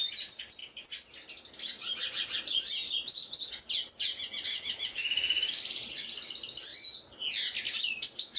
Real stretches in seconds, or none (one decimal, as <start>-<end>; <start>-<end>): 0.0-4.5; 5.6-8.4